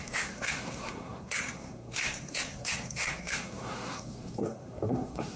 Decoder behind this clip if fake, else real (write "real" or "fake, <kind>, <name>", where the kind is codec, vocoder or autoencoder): fake, codec, SNAC